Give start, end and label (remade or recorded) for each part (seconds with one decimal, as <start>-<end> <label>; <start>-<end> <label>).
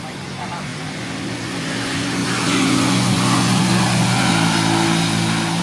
0.0-4.3 remade; 4.3-5.6 recorded